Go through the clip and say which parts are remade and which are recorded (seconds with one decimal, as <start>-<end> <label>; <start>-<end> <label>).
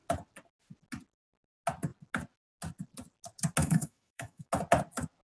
0.0-3.6 recorded; 3.6-4.5 remade; 4.5-5.4 recorded